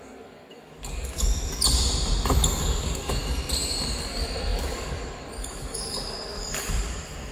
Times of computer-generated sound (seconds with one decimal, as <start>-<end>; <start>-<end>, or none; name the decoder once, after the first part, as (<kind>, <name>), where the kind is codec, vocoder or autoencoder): 0.0-1.3 (codec, DAC); 2.6-3.2; 4.0-7.3